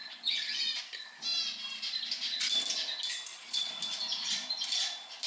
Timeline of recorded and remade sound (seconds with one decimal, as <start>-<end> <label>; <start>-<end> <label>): 0.0-0.8 remade; 0.8-3.3 recorded; 3.3-3.8 remade; 3.8-5.3 recorded